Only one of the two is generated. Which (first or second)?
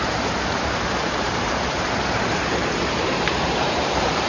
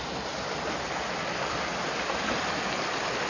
first